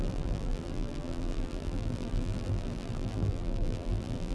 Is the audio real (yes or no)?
no